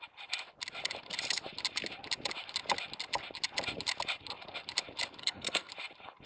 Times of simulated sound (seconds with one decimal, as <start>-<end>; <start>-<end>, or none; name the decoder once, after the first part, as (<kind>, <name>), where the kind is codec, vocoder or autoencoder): 5.2-5.7 (codec, SNAC)